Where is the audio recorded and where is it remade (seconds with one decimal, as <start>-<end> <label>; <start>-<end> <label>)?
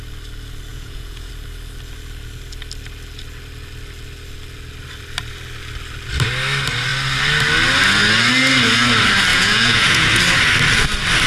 0.0-0.7 recorded; 0.7-1.3 remade; 1.3-9.3 recorded; 9.3-10.2 remade; 10.2-11.3 recorded